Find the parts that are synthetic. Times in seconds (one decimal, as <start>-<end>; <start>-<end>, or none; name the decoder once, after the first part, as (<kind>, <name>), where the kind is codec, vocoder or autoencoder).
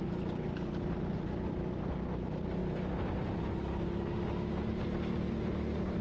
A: none